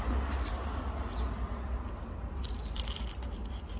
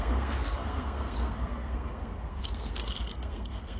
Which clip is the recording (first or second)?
first